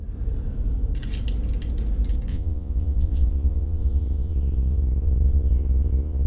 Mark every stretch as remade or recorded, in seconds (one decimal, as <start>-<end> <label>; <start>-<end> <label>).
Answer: 0.0-2.3 recorded; 2.3-6.3 remade